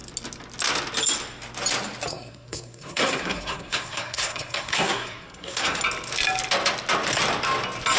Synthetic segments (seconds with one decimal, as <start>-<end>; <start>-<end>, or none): 2.1-5.8